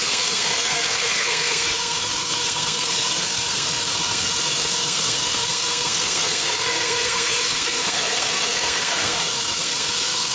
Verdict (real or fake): fake